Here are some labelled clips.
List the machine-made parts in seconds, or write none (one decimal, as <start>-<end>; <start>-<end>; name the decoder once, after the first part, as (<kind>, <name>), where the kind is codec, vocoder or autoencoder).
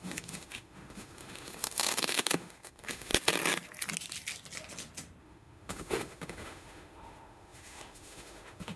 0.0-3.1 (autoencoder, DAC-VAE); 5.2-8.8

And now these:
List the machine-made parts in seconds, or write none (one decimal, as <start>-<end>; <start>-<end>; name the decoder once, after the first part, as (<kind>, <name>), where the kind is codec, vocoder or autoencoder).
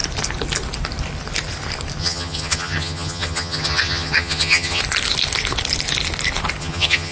2.0-4.8 (vocoder, HiFi-GAN); 6.6-7.1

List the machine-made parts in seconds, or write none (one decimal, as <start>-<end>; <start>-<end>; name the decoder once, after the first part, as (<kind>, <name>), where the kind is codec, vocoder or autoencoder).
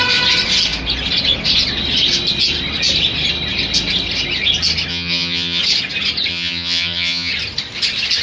4.9-5.6 (vocoder, HiFi-GAN); 6.3-7.3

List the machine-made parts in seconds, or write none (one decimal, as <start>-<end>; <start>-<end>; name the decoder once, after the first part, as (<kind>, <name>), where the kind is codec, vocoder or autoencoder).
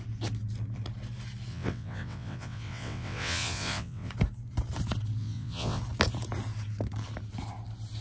1.5-4.1 (vocoder, WaveNeXt); 5.2-5.8